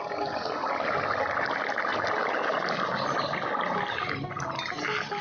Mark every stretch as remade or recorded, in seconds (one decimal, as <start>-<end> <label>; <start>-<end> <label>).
0.0-5.2 recorded